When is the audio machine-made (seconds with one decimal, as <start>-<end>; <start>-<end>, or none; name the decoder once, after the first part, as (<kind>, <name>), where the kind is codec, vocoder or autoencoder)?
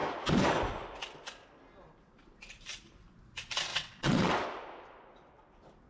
3.7-4.3 (vocoder, WaveNeXt)